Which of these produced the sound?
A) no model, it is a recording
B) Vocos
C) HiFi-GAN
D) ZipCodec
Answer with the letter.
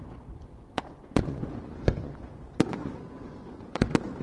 B